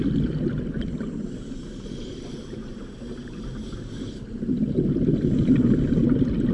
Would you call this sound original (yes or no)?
yes